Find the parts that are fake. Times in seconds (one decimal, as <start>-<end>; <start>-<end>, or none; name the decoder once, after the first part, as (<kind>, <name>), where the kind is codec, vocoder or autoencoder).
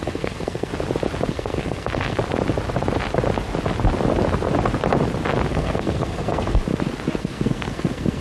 0.0-0.7 (codec, SNAC); 1.3-2.2; 5.5-6.6; 7.2-8.2